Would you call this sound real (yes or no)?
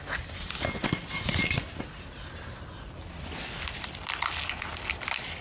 yes